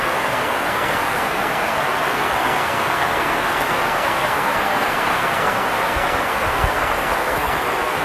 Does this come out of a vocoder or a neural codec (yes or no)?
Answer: yes